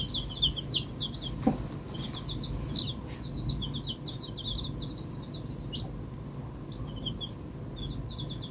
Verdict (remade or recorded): recorded